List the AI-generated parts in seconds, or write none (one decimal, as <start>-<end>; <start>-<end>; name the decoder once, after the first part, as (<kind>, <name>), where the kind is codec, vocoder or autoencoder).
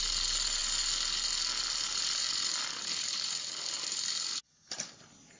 none